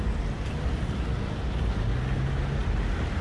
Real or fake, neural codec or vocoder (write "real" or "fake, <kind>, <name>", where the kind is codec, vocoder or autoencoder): real